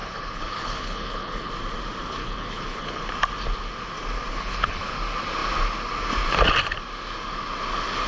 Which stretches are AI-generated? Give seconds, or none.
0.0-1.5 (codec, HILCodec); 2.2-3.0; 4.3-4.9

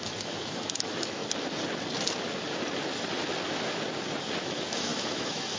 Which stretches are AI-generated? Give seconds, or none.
0.0-1.2 (autoencoder, DAC-VAE); 4.4-5.6

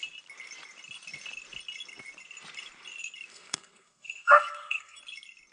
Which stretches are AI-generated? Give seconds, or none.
3.3-5.0 (codec, SNAC)

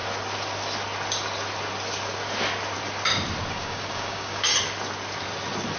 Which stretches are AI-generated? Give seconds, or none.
3.5-4.5 (codec, DAC)